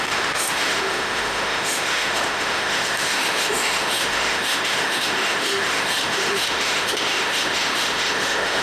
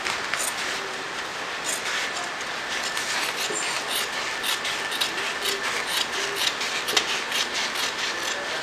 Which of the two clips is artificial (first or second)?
first